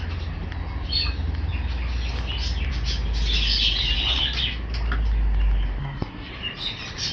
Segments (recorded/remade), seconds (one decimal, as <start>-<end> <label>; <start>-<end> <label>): 0.0-5.8 recorded; 5.8-6.3 remade; 6.3-7.1 recorded